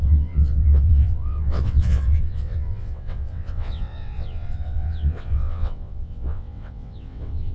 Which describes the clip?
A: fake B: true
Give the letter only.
A